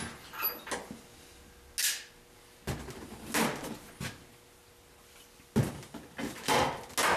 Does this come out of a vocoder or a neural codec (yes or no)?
no